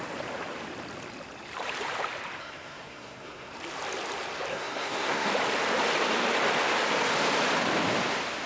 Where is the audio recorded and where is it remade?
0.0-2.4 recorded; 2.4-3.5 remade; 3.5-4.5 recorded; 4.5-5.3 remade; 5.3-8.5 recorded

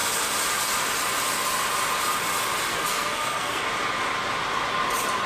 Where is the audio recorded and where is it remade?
0.0-2.7 recorded; 2.7-3.6 remade; 3.6-5.3 recorded

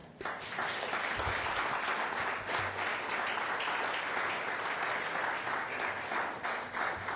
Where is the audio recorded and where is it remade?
0.0-7.2 recorded